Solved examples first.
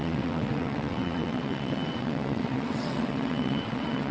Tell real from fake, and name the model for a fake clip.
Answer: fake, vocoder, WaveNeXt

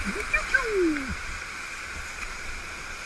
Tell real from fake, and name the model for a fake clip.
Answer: real